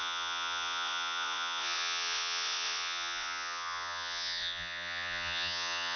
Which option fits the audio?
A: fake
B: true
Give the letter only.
A